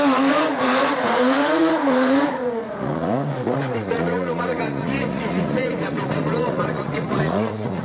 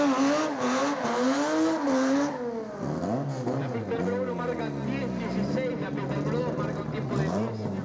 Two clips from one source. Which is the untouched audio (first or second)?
second